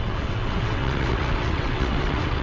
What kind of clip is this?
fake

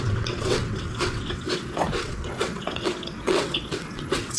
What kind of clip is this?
fake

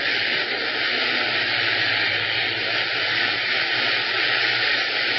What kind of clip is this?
real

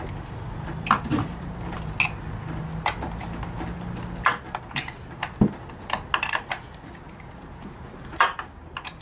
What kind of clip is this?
real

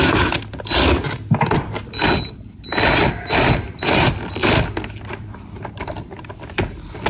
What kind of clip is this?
real